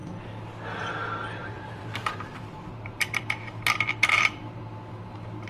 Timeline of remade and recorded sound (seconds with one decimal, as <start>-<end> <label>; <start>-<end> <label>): 0.0-1.4 recorded; 1.4-4.6 remade; 4.6-5.5 recorded